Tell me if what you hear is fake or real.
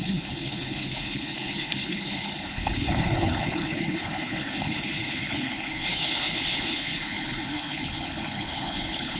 fake